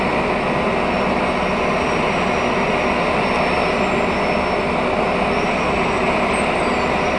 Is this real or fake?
real